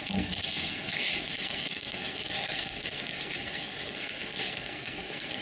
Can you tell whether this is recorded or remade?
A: remade